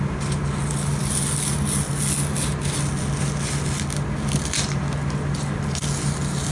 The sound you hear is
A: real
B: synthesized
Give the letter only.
A